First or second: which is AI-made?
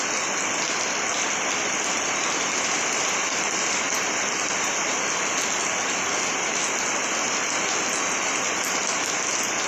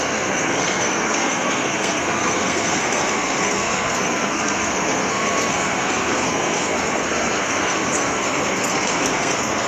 second